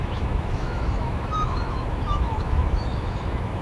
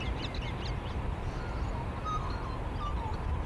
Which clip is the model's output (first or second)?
first